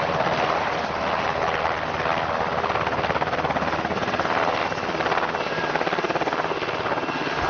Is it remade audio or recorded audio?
recorded